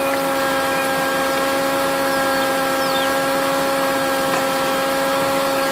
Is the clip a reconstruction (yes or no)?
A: no